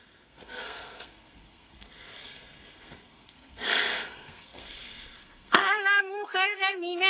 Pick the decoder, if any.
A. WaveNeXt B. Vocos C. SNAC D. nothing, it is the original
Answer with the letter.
C